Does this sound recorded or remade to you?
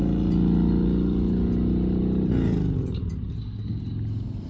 recorded